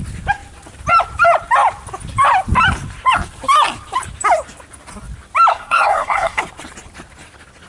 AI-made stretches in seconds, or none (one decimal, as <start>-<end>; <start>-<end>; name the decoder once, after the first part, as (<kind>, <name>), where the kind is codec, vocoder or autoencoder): 5.5-6.4 (codec, SNAC)